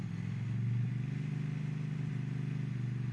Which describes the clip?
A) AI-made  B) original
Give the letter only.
B